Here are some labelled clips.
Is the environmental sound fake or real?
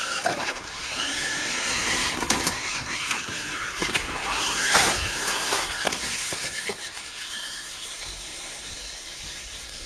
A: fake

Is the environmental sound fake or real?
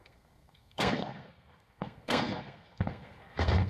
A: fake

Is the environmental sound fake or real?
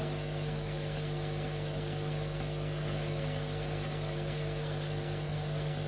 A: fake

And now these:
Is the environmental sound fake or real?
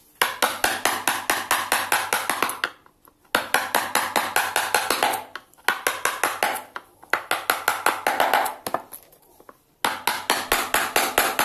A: real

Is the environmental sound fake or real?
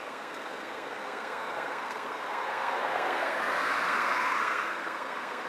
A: fake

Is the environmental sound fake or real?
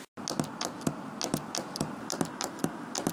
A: real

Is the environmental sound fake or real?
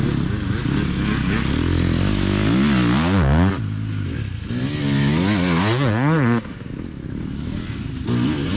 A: real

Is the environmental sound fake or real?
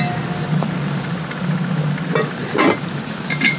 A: real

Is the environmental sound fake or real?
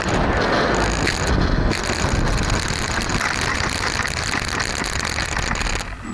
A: real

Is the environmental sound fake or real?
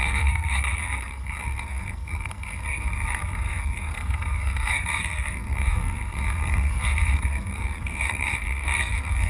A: fake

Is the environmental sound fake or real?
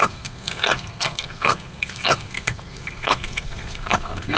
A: fake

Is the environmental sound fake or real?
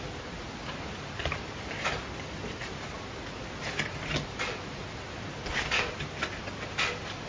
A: real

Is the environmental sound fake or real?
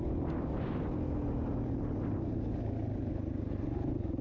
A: real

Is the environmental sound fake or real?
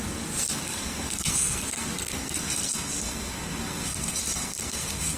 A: fake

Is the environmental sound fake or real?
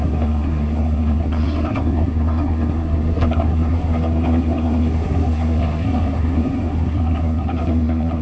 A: fake